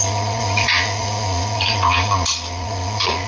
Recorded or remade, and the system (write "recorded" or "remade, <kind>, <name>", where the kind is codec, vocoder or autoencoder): remade, vocoder, Vocos